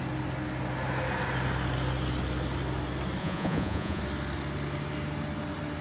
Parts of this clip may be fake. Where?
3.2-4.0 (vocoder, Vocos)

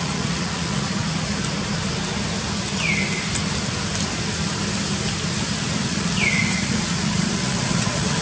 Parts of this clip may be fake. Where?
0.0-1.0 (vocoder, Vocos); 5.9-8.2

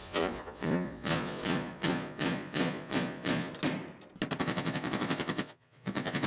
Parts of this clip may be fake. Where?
0.0-3.5 (vocoder, Vocos); 4.4-6.3

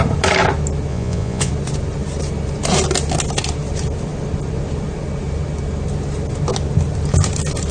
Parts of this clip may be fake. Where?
0.9-1.5 (vocoder, Vocos)